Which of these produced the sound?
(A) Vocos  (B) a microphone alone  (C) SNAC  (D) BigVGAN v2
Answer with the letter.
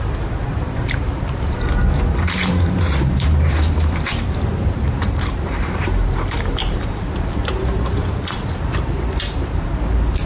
D